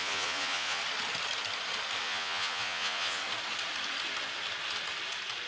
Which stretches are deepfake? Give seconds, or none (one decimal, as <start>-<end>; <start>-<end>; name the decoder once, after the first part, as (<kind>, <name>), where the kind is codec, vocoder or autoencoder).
0.0-0.8 (vocoder, Vocos); 2.0-3.2

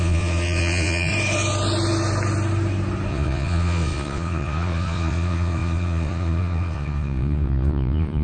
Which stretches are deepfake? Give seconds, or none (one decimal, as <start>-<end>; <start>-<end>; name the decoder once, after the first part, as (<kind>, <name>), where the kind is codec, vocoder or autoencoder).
0.0-1.1 (vocoder, Vocos); 3.1-8.2

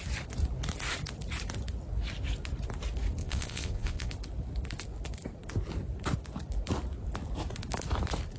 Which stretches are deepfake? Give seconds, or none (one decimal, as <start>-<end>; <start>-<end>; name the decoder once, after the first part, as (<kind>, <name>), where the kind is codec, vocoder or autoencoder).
3.2-4.1 (vocoder, Vocos)

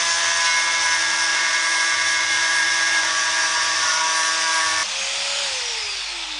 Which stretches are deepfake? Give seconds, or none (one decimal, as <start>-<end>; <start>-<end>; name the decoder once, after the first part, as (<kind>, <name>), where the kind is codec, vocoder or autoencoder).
1.3-4.0 (vocoder, Vocos)

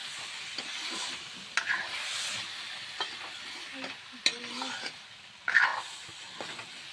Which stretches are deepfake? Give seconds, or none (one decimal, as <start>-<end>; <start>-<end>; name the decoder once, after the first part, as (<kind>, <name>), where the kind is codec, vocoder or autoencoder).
none

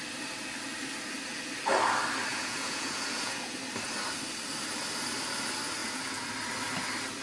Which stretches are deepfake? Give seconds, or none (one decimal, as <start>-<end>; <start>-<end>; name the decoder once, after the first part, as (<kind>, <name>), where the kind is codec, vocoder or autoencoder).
2.3-3.6 (vocoder, Vocos); 5.8-6.3

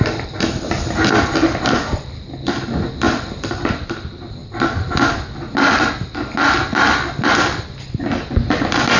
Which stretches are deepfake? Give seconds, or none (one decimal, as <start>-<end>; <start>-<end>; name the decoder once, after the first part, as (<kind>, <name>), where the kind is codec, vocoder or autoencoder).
none

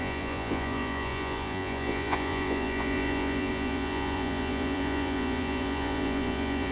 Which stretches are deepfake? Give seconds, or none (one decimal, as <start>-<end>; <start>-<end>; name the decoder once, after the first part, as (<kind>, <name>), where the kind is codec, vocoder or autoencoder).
0.0-6.7 (vocoder, Vocos)